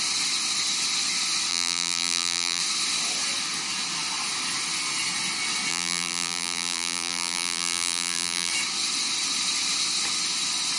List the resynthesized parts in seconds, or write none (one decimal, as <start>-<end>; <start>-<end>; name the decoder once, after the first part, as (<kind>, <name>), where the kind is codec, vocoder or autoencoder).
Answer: 1.5-2.6 (vocoder, BigVGAN v2); 5.7-8.5